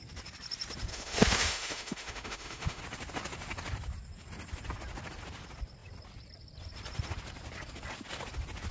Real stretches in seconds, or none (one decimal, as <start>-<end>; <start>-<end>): 0.0-0.9; 2.8-8.7